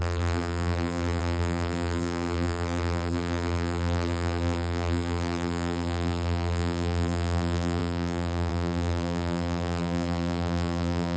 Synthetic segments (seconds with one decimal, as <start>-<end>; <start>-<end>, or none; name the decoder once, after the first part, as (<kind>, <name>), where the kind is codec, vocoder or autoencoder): 0.0-11.2 (vocoder, BigVGAN v2)